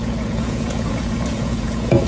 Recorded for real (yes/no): no